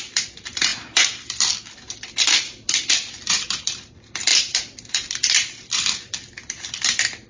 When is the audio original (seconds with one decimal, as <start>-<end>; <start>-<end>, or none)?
none

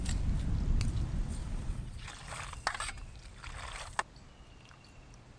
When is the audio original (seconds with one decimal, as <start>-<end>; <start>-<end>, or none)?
0.0-1.4; 2.1-5.4

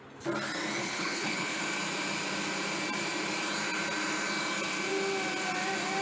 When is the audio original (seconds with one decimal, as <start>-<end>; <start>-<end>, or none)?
0.0-0.8; 1.6-6.0

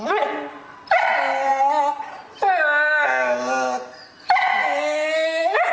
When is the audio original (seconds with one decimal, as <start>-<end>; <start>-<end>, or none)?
0.0-4.5

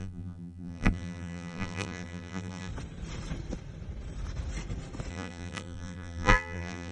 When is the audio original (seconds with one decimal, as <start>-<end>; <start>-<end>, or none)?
2.7-5.1

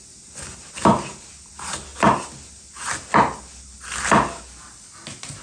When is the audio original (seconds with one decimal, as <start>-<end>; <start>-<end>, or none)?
0.0-5.4

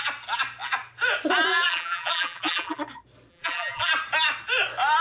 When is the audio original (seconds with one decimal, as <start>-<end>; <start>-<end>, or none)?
0.0-1.5; 2.8-3.3; 3.9-5.0